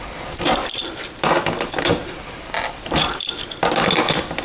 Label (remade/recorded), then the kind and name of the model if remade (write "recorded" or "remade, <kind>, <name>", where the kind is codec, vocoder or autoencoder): remade, vocoder, BigVGAN v2